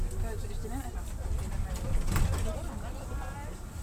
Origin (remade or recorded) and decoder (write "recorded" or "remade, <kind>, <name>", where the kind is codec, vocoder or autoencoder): recorded